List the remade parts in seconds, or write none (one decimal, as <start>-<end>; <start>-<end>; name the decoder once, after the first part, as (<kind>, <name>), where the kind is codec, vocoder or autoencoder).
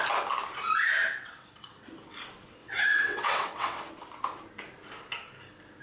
1.1-1.9 (vocoder, WaveNeXt); 2.6-3.9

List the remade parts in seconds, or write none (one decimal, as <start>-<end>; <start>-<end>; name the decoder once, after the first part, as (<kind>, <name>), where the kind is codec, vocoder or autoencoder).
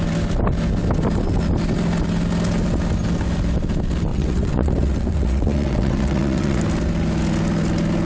4.1-6.6 (vocoder, WaveNeXt)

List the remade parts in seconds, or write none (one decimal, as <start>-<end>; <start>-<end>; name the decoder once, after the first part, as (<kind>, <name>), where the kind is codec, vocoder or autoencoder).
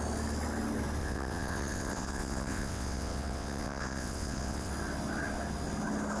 1.0-4.7 (vocoder, WaveNeXt)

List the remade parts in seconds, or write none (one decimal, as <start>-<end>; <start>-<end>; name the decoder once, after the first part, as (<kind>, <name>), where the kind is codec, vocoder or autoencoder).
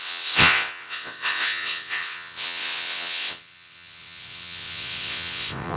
0.0-5.8 (vocoder, WaveNeXt)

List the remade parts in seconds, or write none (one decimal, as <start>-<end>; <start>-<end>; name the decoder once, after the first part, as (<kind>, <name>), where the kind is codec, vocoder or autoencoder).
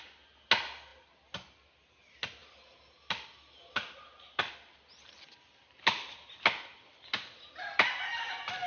none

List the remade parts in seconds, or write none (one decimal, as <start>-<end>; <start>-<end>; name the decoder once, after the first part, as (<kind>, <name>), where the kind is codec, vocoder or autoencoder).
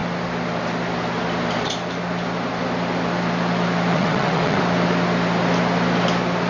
3.9-4.6 (vocoder, WaveNeXt)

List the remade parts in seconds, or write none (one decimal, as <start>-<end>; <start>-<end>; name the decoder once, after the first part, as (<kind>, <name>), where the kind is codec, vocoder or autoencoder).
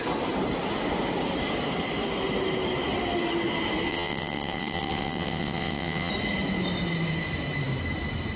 3.9-6.1 (vocoder, WaveNeXt)